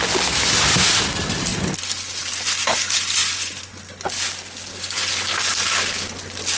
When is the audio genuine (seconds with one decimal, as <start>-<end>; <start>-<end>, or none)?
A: 0.0-6.6